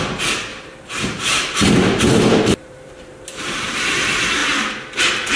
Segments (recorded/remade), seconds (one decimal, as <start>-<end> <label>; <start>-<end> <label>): 0.0-0.5 recorded; 0.5-3.7 remade; 3.7-5.4 recorded